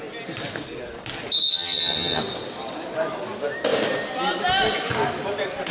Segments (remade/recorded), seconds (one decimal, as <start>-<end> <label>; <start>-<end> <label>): 0.0-1.5 recorded; 1.5-2.2 remade; 2.2-5.7 recorded